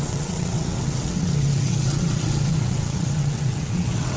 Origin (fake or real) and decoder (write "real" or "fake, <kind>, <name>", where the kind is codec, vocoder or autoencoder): fake, vocoder, WaveNeXt